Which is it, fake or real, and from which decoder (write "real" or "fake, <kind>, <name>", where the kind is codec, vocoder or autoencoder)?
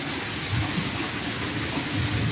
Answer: real